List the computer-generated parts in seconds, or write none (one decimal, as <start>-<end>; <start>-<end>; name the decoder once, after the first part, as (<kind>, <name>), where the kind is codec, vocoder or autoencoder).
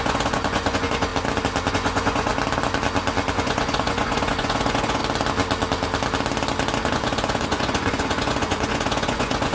0.0-1.1 (vocoder, Vocos); 1.7-2.3; 3.3-5.0; 6.9-9.5